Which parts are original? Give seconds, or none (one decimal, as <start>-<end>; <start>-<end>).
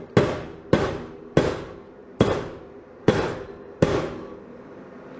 0.0-2.0; 3.6-5.2